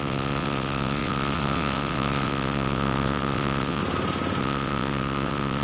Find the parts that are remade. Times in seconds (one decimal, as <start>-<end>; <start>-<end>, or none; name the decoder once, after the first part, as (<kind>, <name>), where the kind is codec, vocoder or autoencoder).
0.0-3.8 (vocoder, WaveNeXt); 4.4-5.6